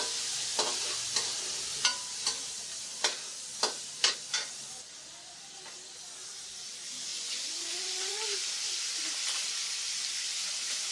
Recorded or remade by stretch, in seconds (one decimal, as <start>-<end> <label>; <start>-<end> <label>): 0.0-7.1 recorded; 7.1-8.2 remade; 8.2-10.9 recorded